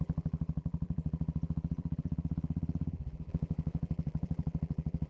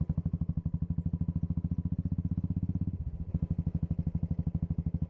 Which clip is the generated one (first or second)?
first